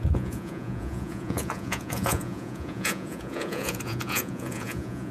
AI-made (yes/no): yes